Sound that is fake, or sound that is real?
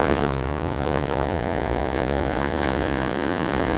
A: fake